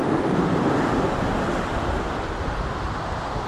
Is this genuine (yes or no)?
yes